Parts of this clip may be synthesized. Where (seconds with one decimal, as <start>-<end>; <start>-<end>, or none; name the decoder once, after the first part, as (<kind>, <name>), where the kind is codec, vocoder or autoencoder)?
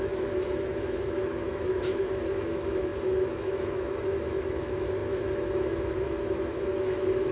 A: 0.0-7.3 (autoencoder, DAC-VAE)